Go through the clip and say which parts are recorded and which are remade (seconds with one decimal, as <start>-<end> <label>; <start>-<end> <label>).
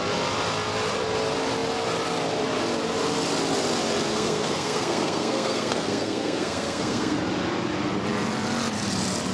0.0-4.1 recorded; 4.1-7.2 remade; 7.2-9.3 recorded